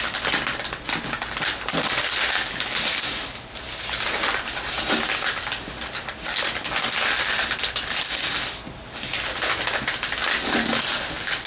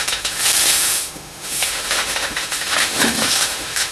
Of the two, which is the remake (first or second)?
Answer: second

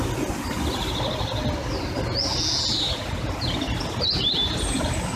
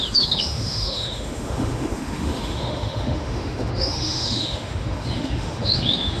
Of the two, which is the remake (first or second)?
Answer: second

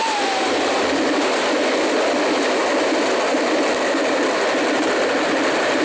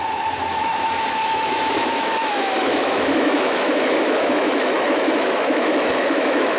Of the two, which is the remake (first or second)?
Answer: second